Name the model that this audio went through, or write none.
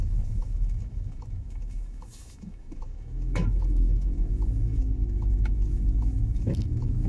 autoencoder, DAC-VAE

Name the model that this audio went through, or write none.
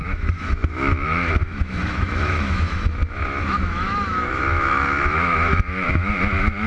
autoencoder, DAC-VAE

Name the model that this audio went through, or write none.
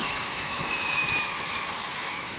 autoencoder, DAC-VAE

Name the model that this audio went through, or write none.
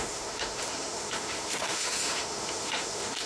autoencoder, DAC-VAE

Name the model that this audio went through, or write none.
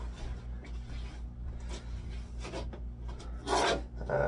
none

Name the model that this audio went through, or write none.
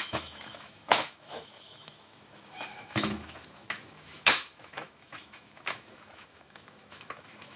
autoencoder, DAC-VAE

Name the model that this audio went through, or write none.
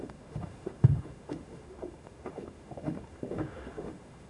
autoencoder, DAC-VAE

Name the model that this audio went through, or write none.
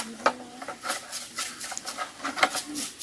none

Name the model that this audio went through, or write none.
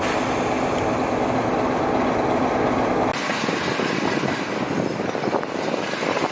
none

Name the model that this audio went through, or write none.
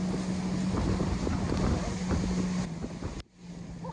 none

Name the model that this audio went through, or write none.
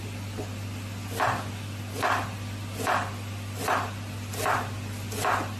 none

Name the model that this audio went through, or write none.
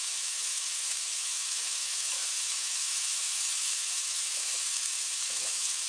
autoencoder, DAC-VAE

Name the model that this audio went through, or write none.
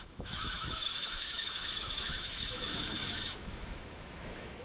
autoencoder, DAC-VAE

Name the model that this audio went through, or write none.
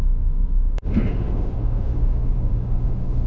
autoencoder, DAC-VAE